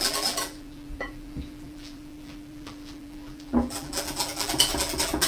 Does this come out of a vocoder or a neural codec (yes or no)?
yes